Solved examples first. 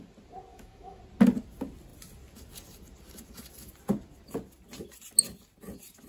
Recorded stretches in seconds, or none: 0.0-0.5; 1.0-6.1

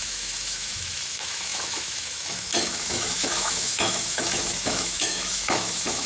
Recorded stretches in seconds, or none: none

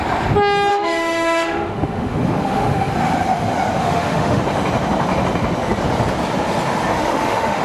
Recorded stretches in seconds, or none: 0.0-0.7; 2.9-3.8; 4.4-6.9

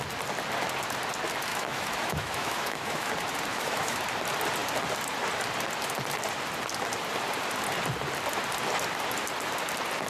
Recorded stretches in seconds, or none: 0.0-1.5; 3.1-3.5; 4.0-10.1